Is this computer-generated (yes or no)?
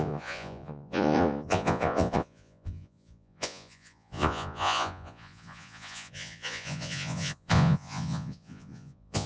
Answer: yes